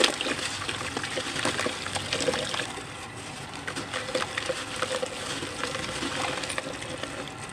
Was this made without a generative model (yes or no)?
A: yes